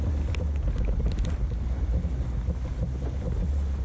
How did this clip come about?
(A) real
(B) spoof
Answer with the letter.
A